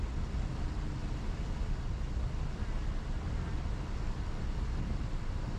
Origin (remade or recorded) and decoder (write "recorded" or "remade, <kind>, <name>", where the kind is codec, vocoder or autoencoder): recorded